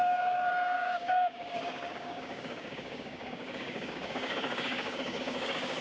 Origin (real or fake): fake